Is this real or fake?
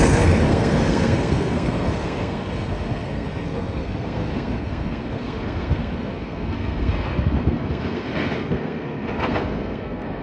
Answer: fake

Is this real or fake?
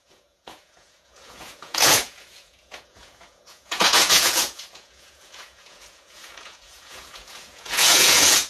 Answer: fake